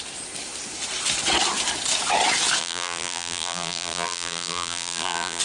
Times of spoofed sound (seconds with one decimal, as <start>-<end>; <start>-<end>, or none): 2.6-5.4